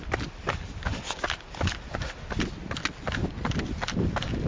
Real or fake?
real